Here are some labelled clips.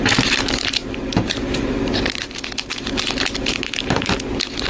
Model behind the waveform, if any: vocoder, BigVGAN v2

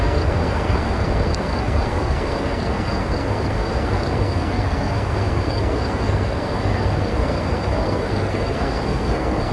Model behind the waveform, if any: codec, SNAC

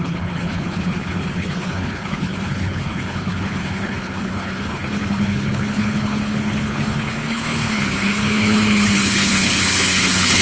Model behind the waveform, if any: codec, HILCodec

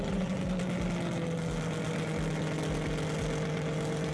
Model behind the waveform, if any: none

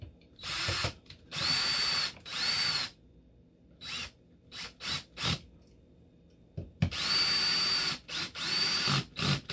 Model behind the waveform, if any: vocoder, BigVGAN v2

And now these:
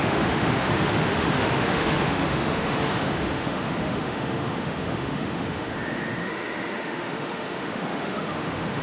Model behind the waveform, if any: autoencoder, DAC-VAE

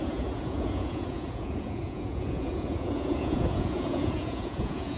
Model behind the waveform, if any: vocoder, Vocos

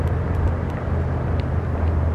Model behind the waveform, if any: none